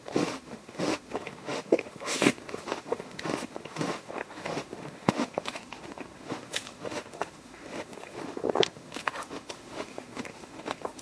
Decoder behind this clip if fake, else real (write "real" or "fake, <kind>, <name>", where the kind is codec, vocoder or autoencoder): fake, autoencoder, DAC-VAE